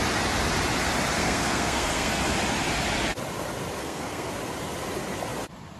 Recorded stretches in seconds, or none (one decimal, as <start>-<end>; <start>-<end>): 0.0-1.2; 2.2-3.8; 4.3-5.8